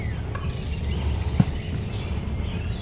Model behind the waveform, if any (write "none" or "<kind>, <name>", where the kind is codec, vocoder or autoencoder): none